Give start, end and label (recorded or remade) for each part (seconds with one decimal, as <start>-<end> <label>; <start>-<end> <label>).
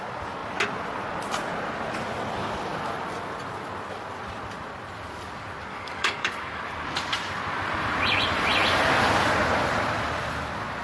0.0-5.7 recorded; 5.7-6.6 remade; 6.6-10.8 recorded